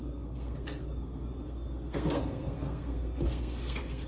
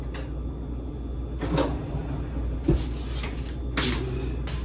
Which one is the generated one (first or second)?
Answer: first